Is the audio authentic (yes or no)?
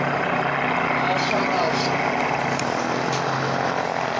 yes